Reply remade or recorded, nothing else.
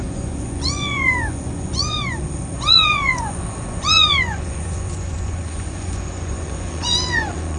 remade